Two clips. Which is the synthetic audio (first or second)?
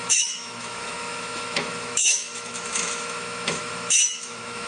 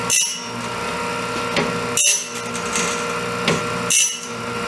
first